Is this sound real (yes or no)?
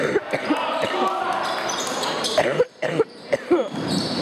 no